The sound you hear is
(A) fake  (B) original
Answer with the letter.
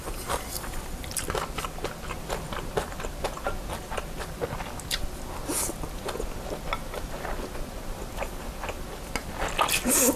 B